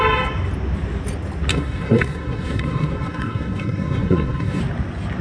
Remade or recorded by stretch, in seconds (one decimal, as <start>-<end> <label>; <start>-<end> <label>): 0.0-1.5 recorded; 1.5-4.6 remade; 4.6-5.2 recorded